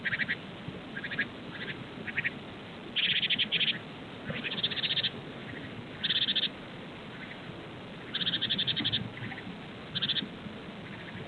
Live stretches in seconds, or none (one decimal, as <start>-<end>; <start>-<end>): 0.0-8.4; 8.9-11.3